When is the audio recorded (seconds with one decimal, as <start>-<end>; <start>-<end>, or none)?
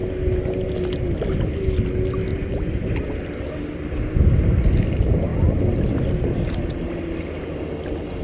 0.0-8.2